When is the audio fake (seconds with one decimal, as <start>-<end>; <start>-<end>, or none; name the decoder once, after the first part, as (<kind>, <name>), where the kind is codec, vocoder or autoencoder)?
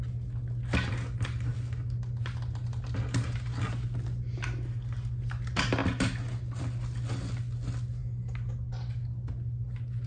none